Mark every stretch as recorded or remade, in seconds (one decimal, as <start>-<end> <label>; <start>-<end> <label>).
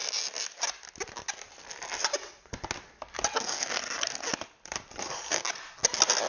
0.0-3.4 recorded; 3.4-3.8 remade; 3.8-5.0 recorded; 5.0-5.4 remade; 5.4-6.3 recorded